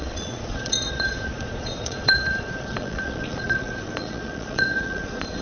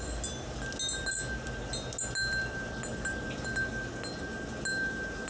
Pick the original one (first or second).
second